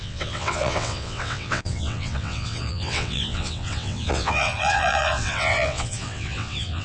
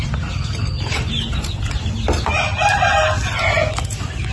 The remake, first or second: first